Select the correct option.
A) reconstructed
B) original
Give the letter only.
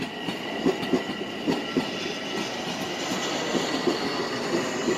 B